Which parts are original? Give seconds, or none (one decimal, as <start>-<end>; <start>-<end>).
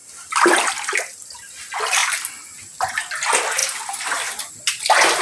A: 0.0-5.2